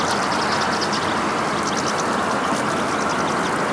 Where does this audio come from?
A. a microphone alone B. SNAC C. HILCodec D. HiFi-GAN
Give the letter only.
A